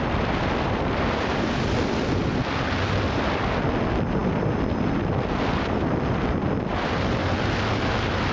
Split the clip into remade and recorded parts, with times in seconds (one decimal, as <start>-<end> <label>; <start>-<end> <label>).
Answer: 0.0-8.3 remade